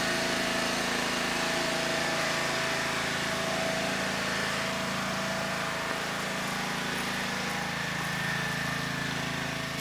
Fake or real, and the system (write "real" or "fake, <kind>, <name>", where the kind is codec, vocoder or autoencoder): real